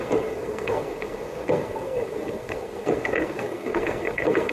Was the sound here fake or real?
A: fake